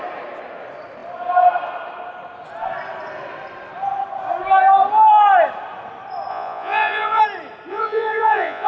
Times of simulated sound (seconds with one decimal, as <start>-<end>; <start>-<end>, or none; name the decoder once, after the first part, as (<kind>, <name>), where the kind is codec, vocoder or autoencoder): 6.3-7.2 (vocoder, Vocos); 7.7-8.7